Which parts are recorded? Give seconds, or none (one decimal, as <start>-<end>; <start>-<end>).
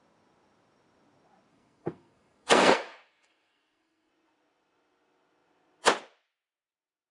0.0-1.5; 4.1-7.1